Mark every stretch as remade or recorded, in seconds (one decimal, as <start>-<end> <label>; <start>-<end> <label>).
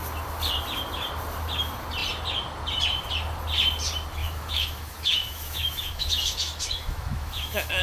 0.0-4.2 recorded; 4.2-7.8 remade